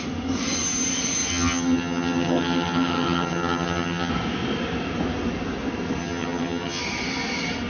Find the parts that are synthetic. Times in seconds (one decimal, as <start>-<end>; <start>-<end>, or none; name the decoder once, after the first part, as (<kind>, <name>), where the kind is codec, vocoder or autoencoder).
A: 1.3-4.1 (vocoder, HiFi-GAN); 6.0-6.8